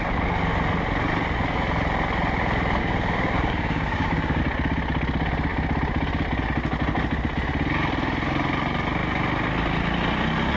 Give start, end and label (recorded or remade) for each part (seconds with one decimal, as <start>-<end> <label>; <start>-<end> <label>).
0.0-2.8 recorded; 2.8-4.4 remade; 4.4-10.6 recorded